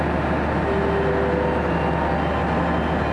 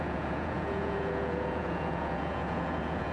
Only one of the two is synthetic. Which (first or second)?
second